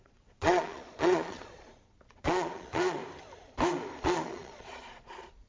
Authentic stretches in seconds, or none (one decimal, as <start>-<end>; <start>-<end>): 3.0-4.0